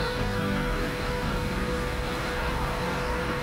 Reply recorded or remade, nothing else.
remade